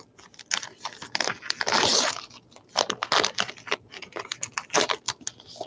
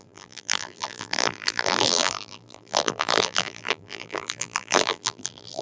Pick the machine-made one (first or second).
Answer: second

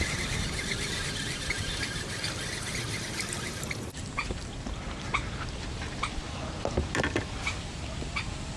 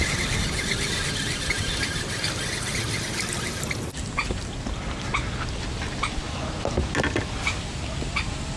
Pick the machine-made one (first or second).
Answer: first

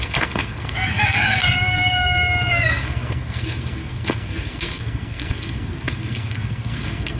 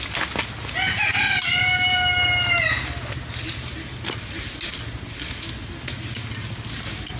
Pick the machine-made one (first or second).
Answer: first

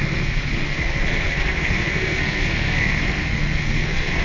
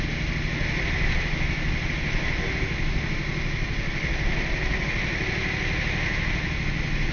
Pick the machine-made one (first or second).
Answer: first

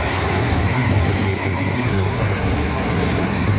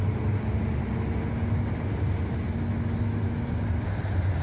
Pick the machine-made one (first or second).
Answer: first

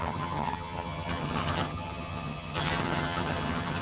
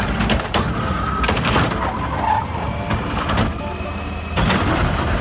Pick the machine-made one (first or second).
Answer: first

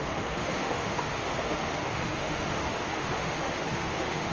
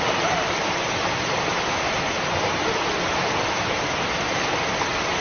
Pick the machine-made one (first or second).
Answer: first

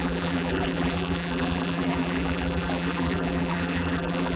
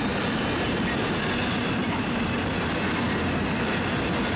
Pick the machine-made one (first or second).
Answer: first